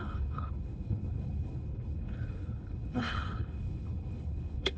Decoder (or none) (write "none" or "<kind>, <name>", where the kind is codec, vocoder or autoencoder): codec, HILCodec